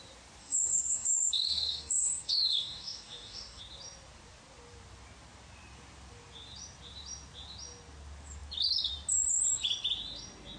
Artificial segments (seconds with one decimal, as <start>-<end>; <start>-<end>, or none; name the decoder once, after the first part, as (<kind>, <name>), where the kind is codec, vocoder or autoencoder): 0.4-3.6 (codec, DAC)